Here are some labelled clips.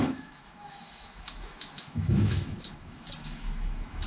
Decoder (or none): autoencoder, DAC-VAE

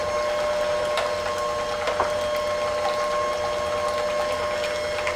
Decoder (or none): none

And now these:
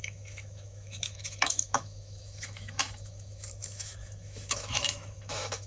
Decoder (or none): autoencoder, DAC-VAE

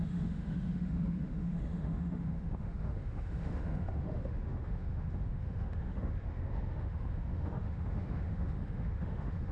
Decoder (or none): autoencoder, DAC-VAE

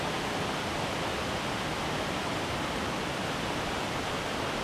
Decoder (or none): none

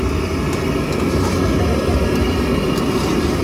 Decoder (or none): none